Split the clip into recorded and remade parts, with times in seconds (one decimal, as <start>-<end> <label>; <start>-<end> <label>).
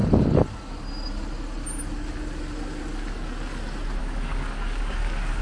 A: 0.0-4.0 recorded; 4.0-5.4 remade